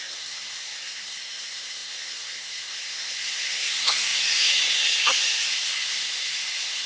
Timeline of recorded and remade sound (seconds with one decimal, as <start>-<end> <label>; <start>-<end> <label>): 0.0-6.9 remade